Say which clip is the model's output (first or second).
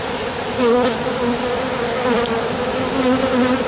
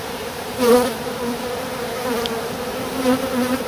second